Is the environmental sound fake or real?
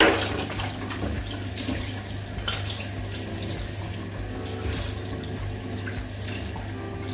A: real